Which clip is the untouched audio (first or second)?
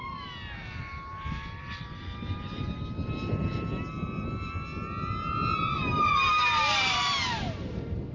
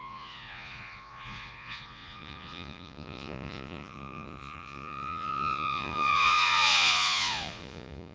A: first